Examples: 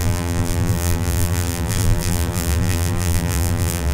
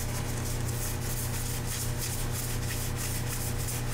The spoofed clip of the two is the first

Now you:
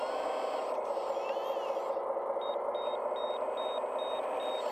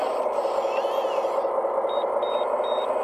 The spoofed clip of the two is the second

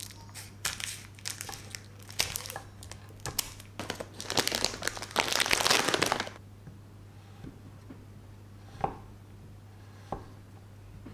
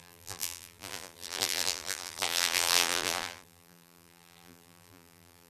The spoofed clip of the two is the second